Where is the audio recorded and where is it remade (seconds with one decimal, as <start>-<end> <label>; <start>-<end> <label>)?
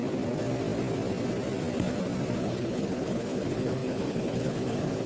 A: 0.0-2.4 recorded; 2.4-5.1 remade